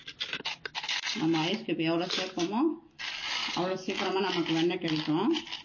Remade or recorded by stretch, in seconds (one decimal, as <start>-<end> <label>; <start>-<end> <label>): 0.0-5.6 recorded